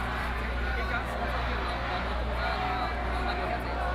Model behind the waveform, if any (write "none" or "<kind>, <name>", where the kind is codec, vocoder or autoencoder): none